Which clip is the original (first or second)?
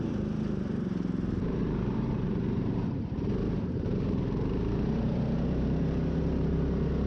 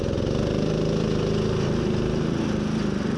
second